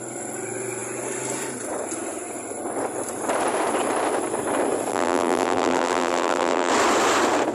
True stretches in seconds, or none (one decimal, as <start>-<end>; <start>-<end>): 0.0-4.9; 6.7-7.5